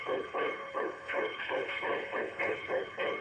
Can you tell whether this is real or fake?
fake